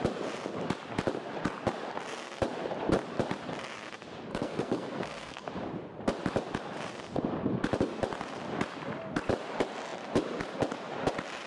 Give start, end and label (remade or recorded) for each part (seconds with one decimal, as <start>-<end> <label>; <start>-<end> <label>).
0.0-4.3 recorded; 4.3-5.5 remade; 5.5-11.5 recorded